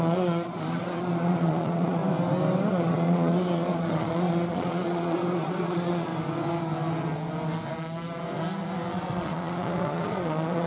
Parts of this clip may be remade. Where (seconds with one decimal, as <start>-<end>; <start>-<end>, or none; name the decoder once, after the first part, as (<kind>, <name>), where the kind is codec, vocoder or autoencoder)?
0.0-2.0 (vocoder, Vocos); 2.7-6.1; 8.9-10.7